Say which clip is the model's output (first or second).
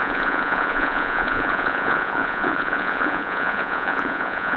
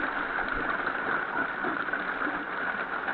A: first